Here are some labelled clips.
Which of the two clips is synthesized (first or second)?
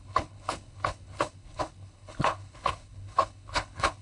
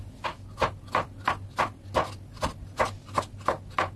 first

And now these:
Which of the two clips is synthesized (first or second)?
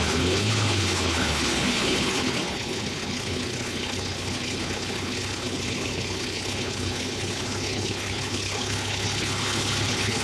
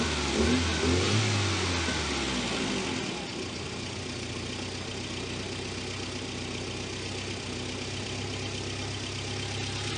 first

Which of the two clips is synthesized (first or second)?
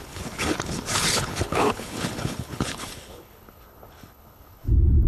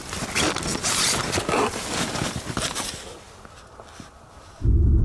first